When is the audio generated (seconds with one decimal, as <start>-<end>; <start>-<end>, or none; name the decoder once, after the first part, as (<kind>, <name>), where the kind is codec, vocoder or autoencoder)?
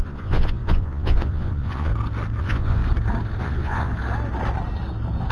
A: 0.0-1.9 (vocoder, Vocos); 2.4-2.8; 3.4-3.9